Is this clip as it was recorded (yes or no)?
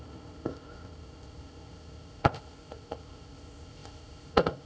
no